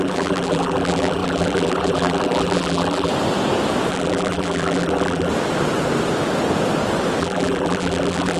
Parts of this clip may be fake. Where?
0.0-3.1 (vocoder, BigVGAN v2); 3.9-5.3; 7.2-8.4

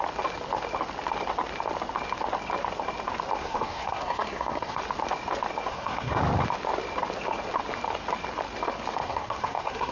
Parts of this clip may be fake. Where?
3.4-4.8 (codec, SNAC); 5.7-6.2; 9.0-9.9